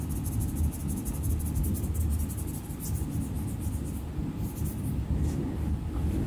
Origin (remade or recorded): recorded